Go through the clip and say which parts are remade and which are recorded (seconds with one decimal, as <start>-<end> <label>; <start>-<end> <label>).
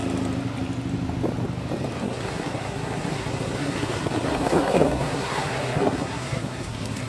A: 0.0-2.0 recorded; 2.0-7.1 remade